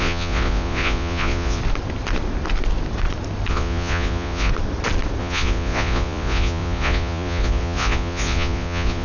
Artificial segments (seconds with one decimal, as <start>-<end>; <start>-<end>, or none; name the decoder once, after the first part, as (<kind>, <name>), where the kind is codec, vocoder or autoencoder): 0.0-1.6 (vocoder, Vocos); 3.5-4.5; 5.2-9.0